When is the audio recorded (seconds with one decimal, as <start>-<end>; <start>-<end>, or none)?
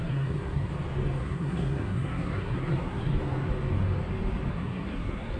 0.7-1.2; 3.1-4.5